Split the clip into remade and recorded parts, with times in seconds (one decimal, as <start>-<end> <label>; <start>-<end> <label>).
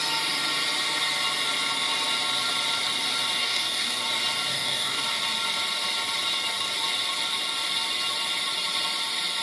0.0-3.4 recorded; 3.4-4.0 remade; 4.0-4.5 recorded; 4.5-5.2 remade; 5.2-9.4 recorded